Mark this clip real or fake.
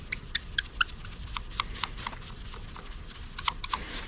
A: fake